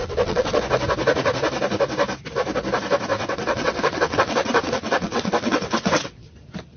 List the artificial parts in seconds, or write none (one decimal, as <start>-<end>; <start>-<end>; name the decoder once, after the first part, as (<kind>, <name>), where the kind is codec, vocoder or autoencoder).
0.0-0.6 (vocoder, WaveNeXt); 3.1-6.3